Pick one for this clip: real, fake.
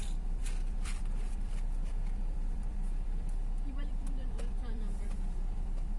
fake